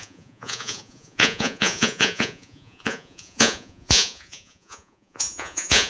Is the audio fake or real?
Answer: fake